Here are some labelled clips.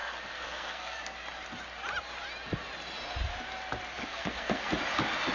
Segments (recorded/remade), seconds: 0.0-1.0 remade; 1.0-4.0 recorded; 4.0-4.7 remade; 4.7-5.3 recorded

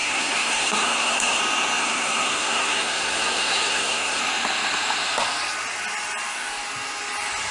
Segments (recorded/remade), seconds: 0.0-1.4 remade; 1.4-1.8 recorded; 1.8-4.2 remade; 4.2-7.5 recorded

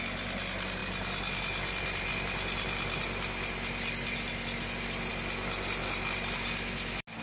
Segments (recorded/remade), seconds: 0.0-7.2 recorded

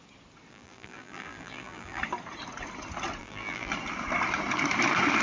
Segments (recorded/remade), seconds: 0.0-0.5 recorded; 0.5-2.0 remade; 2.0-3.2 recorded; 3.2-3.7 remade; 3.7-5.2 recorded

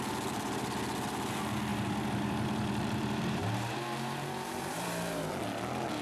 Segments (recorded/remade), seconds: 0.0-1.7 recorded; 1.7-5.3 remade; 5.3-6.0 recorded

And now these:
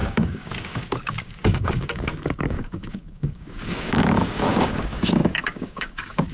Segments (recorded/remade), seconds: 0.0-6.3 remade

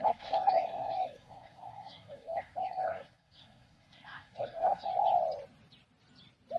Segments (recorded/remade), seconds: 0.0-4.9 remade; 4.9-6.6 recorded

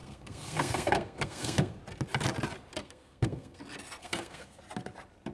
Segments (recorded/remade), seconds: 0.0-1.8 remade; 1.8-2.8 recorded; 2.8-3.6 remade; 3.6-4.0 recorded; 4.0-4.6 remade; 4.6-5.3 recorded